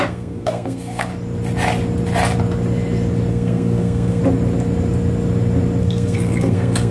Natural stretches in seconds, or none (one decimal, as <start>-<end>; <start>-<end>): 1.1-3.3; 4.2-5.8